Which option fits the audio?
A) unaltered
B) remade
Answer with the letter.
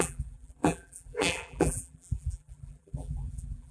B